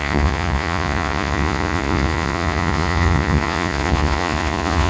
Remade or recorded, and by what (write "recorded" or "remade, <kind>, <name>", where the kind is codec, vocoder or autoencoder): remade, vocoder, Vocos